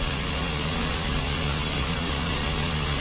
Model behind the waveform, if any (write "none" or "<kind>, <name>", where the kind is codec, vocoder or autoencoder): vocoder, Vocos